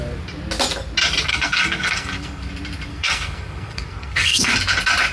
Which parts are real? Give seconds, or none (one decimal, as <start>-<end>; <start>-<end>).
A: 0.0-1.3; 2.5-2.9; 4.5-5.1